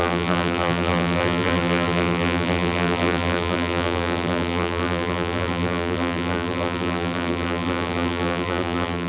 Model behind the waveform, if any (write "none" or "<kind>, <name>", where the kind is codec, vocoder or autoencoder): vocoder, BigVGAN v2